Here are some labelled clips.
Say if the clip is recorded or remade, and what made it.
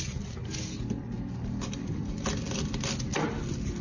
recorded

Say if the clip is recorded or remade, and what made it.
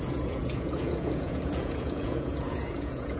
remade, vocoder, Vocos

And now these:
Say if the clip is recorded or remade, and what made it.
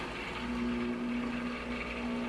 recorded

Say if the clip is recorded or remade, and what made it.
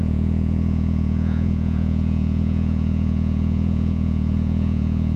remade, vocoder, Vocos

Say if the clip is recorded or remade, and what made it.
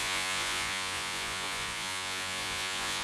remade, vocoder, Vocos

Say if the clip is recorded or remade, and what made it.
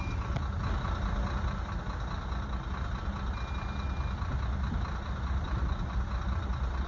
recorded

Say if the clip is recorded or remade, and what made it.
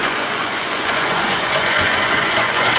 remade, vocoder, Vocos